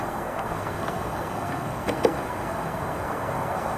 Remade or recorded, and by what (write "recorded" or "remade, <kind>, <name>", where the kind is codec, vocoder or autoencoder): remade, codec, SNAC